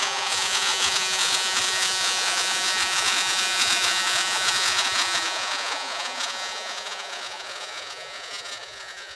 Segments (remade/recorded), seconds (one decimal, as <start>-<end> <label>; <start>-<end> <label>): 0.0-9.2 remade